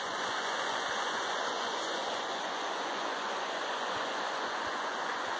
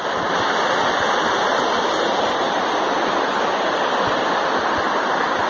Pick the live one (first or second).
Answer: second